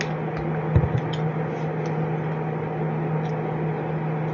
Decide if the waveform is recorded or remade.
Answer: recorded